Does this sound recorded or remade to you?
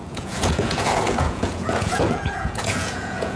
remade